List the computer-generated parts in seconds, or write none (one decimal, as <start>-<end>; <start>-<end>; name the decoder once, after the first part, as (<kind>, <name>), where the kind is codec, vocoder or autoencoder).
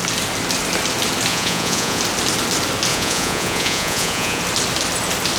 1.3-2.0 (vocoder, Vocos); 2.9-4.4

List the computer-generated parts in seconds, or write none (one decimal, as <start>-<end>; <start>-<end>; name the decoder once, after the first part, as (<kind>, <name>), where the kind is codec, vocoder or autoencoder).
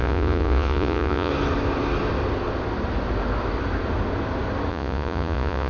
0.0-1.3 (vocoder, Vocos); 4.7-5.7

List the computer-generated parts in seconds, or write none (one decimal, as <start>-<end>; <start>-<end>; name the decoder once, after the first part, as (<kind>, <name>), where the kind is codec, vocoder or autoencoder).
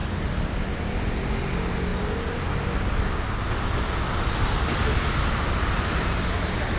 none